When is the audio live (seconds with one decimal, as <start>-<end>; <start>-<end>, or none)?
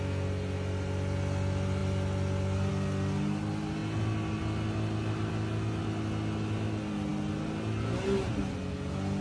0.0-9.2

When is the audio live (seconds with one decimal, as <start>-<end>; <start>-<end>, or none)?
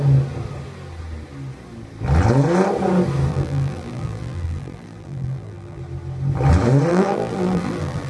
0.0-3.3; 5.8-6.9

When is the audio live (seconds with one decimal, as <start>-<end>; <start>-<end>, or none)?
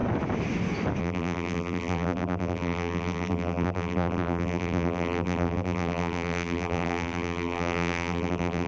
0.0-1.0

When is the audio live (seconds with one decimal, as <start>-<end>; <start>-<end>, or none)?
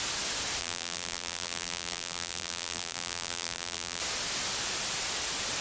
0.0-0.6; 4.0-5.6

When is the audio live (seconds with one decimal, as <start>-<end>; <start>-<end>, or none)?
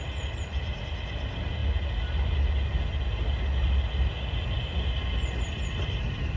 0.0-6.4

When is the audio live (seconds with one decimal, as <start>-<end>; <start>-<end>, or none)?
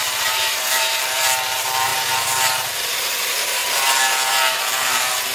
3.6-4.3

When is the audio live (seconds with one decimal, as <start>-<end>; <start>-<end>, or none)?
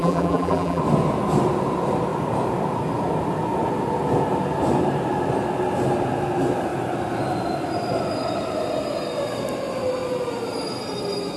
0.8-11.4